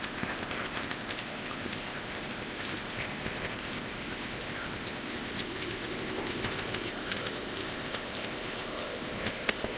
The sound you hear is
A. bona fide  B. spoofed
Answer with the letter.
B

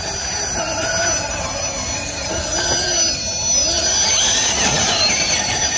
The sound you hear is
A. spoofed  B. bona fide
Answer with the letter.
B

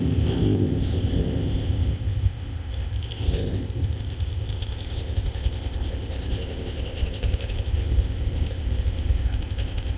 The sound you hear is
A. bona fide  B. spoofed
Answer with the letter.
B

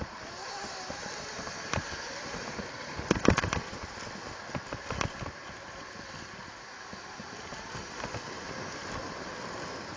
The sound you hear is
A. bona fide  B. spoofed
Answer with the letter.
A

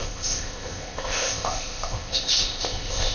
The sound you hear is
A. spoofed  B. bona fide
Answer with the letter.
A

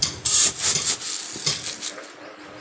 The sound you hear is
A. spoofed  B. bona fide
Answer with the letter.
B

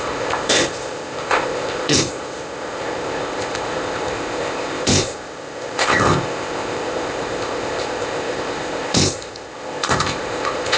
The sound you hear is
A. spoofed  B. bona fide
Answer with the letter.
A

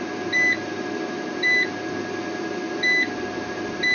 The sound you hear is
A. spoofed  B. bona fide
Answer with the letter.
B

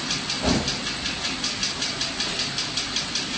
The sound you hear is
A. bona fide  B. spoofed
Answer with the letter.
A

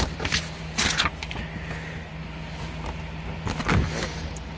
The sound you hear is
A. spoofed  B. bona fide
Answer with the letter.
B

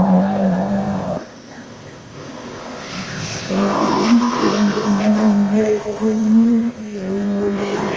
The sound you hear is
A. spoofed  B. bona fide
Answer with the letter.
A